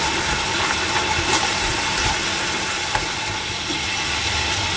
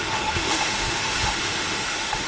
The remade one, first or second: second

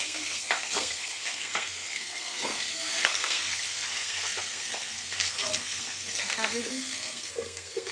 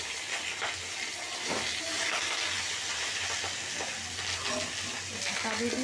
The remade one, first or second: first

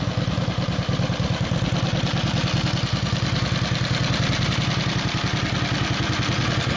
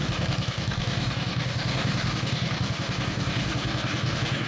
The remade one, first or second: second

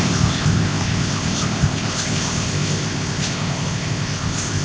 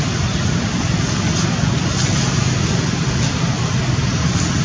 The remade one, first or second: first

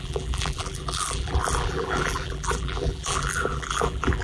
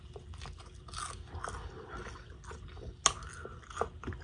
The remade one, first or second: first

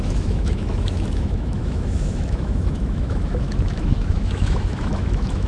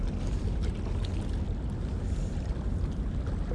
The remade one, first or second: first